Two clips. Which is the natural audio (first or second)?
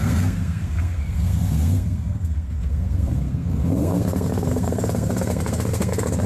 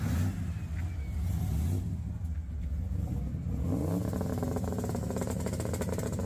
second